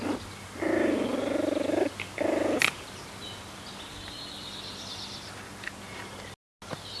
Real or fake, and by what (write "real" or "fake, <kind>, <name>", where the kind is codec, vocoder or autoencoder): real